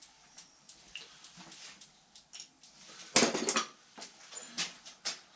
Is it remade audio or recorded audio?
recorded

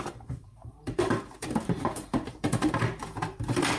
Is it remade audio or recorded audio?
remade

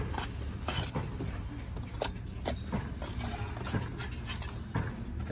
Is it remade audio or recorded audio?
recorded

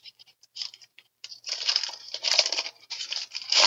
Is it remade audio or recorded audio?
remade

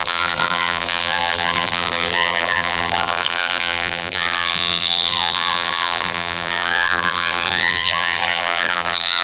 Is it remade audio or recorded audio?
remade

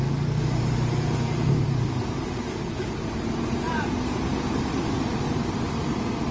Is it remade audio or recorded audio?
recorded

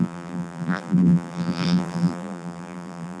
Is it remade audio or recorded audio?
remade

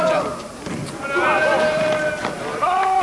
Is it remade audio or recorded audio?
remade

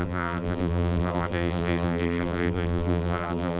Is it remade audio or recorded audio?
remade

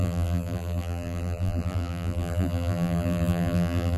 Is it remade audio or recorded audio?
remade